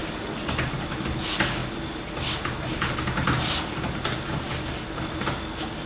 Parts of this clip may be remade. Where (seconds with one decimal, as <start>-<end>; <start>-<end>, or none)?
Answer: none